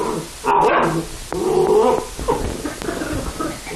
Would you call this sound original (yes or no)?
yes